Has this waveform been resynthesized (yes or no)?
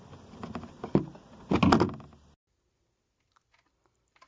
no